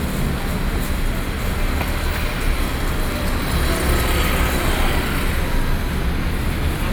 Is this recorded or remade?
recorded